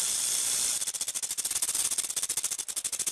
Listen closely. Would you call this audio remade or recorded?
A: recorded